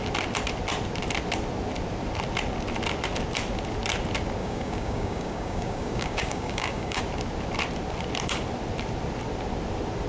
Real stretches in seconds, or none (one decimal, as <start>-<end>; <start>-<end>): 0.0-4.4; 7.0-10.1